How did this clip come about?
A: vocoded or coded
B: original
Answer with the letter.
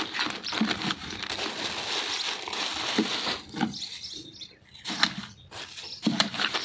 B